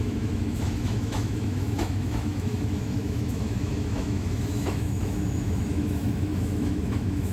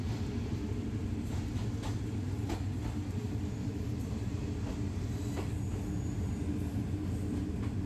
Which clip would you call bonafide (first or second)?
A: second